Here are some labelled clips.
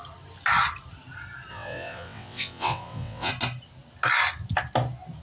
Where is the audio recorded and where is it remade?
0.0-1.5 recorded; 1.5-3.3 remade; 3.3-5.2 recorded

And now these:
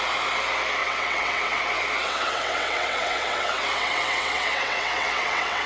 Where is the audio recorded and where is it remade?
0.0-0.8 recorded; 0.8-1.6 remade; 1.6-2.0 recorded; 2.0-5.7 remade

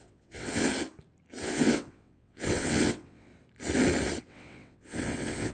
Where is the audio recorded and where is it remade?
0.0-0.7 remade; 0.7-1.4 recorded; 1.4-3.3 remade; 3.3-4.2 recorded; 4.2-5.5 remade

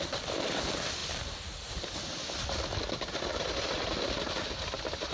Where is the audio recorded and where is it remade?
0.0-5.1 recorded

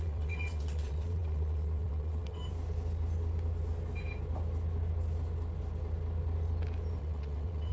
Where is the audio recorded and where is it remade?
0.0-2.4 remade; 2.4-7.0 recorded; 7.0-7.7 remade

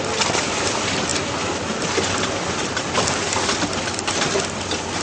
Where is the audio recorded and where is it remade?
0.0-5.0 recorded